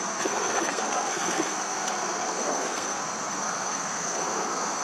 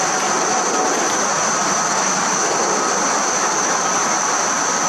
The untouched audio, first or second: second